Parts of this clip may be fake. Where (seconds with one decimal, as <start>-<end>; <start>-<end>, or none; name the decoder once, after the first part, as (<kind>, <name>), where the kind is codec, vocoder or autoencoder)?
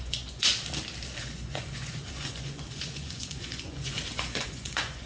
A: 0.0-0.5 (vocoder, Vocos); 1.2-5.1